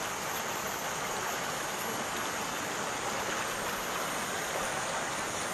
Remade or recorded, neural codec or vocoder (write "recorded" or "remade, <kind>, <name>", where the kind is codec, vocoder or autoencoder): recorded